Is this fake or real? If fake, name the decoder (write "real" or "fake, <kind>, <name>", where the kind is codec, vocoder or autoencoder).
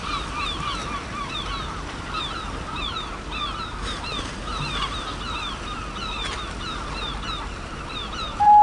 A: real